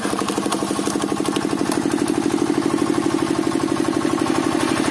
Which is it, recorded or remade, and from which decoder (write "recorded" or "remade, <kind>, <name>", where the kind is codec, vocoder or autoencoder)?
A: recorded